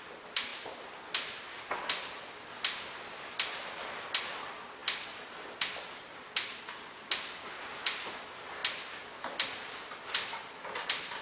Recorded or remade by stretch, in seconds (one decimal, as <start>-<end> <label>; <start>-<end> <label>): 0.0-11.2 recorded